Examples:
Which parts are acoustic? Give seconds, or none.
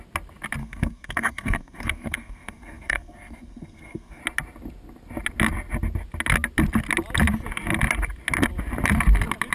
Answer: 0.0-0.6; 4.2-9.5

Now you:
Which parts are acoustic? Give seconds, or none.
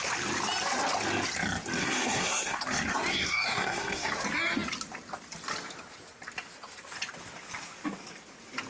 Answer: 0.0-1.8; 2.6-3.1; 4.1-8.7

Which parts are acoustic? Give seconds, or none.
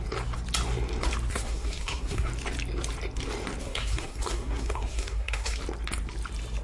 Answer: 0.0-1.3; 2.3-3.6; 5.6-6.6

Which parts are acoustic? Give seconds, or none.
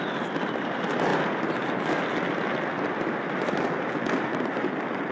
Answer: 0.0-5.1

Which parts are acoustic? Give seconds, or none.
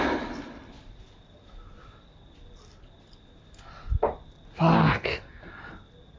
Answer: 0.0-4.7; 5.4-6.2